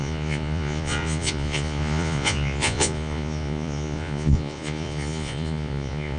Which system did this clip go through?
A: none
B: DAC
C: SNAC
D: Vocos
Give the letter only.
D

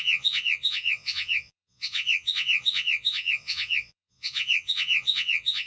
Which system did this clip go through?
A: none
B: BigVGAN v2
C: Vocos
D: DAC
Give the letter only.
C